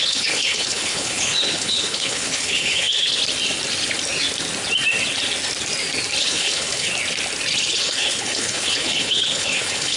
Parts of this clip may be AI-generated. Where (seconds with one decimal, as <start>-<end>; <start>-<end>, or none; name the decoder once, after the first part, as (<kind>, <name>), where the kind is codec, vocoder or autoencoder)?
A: 0.0-3.2 (codec, HILCodec); 6.2-6.9; 7.8-10.0